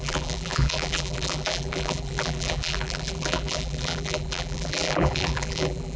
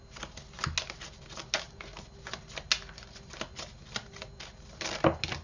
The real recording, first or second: second